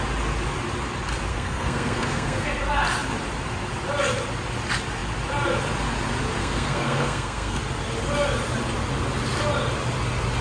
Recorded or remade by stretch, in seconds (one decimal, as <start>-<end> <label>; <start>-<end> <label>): 0.0-1.3 recorded; 1.3-2.6 remade; 2.6-6.4 recorded; 6.4-7.6 remade; 7.6-10.4 recorded